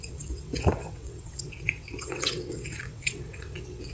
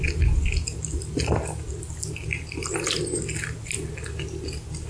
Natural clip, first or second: second